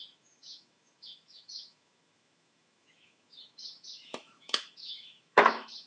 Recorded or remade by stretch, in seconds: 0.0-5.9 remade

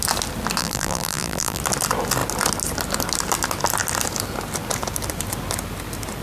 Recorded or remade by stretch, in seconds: 0.0-0.6 recorded; 0.6-1.6 remade; 1.6-6.2 recorded

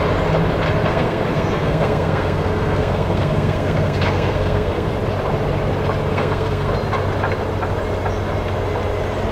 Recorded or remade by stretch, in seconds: 0.0-0.8 recorded; 0.8-4.9 remade; 4.9-6.1 recorded; 6.1-6.7 remade; 6.7-9.3 recorded